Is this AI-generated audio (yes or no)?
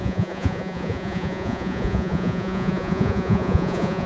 yes